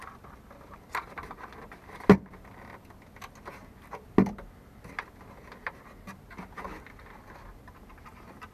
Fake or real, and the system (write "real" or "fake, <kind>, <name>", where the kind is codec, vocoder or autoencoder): real